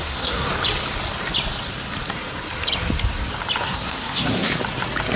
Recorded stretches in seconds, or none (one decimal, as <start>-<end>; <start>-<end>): 0.5-3.6; 4.5-5.2